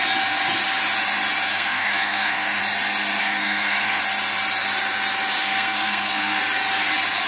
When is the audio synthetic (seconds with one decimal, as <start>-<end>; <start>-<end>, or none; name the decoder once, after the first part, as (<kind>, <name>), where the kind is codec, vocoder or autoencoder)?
1.5-2.6 (codec, SNAC); 3.2-4.0; 5.4-6.4